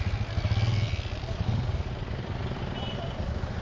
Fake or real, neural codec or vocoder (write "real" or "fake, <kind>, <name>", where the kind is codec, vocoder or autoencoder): real